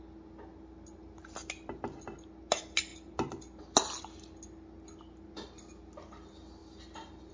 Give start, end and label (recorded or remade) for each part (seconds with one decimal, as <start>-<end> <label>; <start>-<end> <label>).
0.0-7.3 recorded